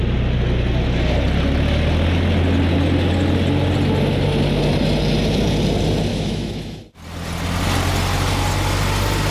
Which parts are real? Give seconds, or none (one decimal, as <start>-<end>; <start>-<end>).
0.0-6.1; 6.8-9.3